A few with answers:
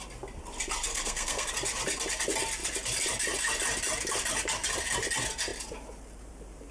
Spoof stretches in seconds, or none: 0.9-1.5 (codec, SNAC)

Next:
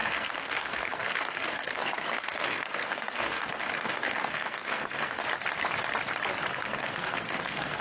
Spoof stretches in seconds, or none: 0.0-5.2 (codec, SNAC); 6.5-7.8

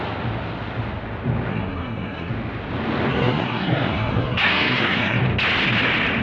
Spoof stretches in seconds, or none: 1.5-2.3 (codec, SNAC); 3.1-5.2

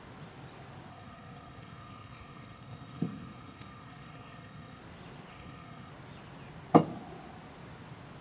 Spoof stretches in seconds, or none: 0.9-4.8 (codec, SNAC); 5.3-5.9